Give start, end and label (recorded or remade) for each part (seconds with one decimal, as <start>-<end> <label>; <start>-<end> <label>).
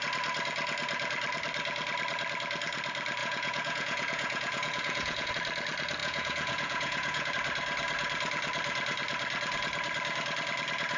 0.0-3.2 recorded; 3.2-5.3 remade; 5.3-6.0 recorded; 6.0-7.3 remade; 7.3-11.0 recorded